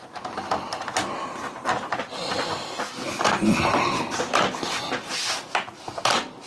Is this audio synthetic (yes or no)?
no